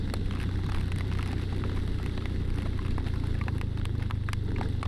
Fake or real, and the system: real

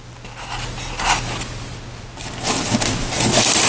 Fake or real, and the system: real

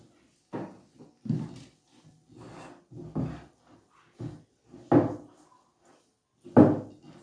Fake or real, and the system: real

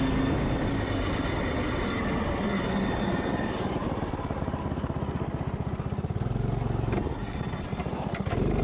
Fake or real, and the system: real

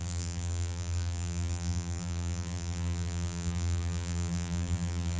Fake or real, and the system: fake, vocoder, BigVGAN v2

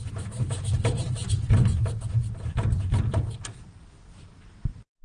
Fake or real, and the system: real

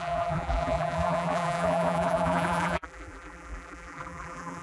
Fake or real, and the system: fake, vocoder, BigVGAN v2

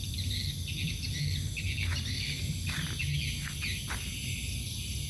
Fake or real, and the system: real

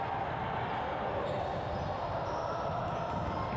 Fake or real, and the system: real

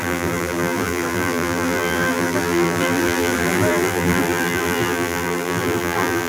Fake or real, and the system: fake, vocoder, BigVGAN v2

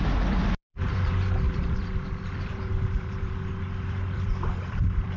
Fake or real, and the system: fake, vocoder, BigVGAN v2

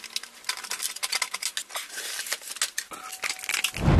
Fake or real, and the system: real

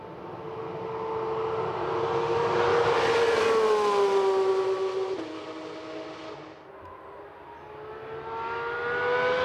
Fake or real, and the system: real